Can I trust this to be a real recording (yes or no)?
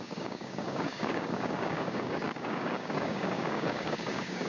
no